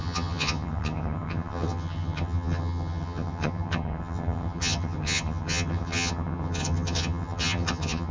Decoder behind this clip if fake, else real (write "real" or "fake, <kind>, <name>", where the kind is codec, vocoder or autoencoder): fake, vocoder, HiFi-GAN